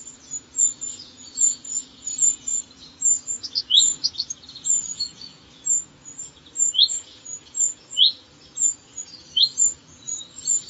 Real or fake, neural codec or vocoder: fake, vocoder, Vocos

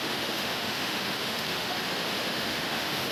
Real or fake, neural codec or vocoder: fake, autoencoder, DAC-VAE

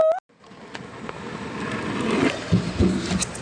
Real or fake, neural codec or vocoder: real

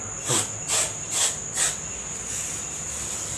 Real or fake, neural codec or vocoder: real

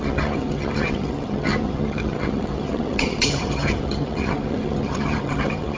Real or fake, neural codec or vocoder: fake, vocoder, HiFi-GAN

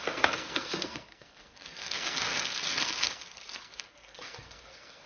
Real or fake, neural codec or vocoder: fake, codec, SNAC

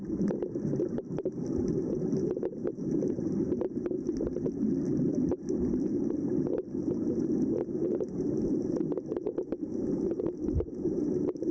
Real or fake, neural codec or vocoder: real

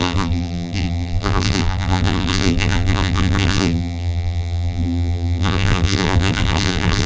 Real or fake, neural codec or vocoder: fake, vocoder, BigVGAN v2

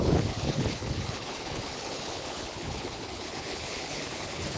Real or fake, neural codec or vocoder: fake, codec, HILCodec